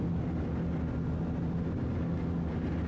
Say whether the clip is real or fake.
real